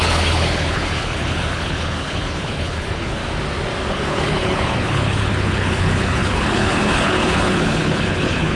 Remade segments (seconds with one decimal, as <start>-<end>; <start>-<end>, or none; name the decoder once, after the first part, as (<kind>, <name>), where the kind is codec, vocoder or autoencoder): 0.0-3.2 (codec, HILCodec); 3.9-8.6